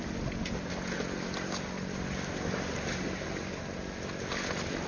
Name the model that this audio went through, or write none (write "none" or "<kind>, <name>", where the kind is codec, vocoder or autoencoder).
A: none